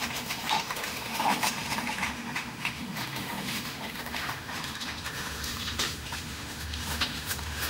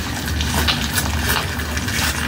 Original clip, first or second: second